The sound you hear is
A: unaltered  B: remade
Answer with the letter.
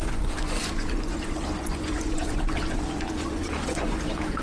B